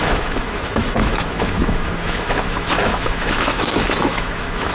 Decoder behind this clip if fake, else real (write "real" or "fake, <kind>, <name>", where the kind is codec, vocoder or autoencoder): fake, autoencoder, DAC-VAE